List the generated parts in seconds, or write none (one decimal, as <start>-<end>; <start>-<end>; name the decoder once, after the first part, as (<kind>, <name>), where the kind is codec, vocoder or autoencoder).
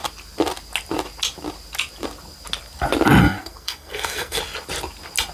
3.2-4.4 (codec, SNAC)